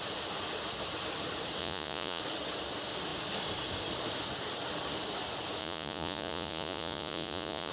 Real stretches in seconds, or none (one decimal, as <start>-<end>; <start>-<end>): 0.0-1.6; 2.2-5.6